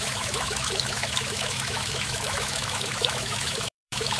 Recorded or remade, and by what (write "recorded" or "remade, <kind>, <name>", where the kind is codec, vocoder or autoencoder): remade, autoencoder, DAC-VAE